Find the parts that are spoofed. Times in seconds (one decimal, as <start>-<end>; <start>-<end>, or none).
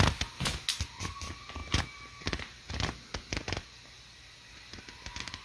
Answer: none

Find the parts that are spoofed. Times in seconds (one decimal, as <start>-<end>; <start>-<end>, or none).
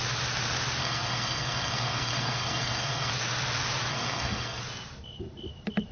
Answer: 0.8-3.1; 3.9-4.6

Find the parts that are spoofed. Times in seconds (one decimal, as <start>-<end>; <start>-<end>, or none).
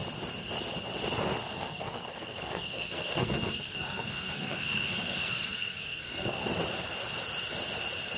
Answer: 1.5-6.4